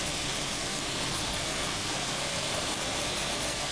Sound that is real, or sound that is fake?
fake